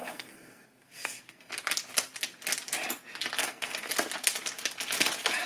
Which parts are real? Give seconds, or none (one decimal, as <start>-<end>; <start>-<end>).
1.5-3.4; 3.9-5.5